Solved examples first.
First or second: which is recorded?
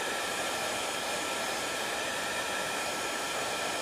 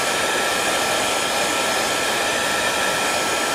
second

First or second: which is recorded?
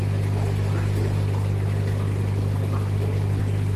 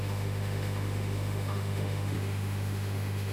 first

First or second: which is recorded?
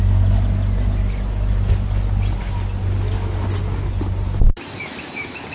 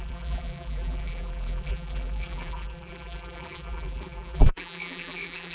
first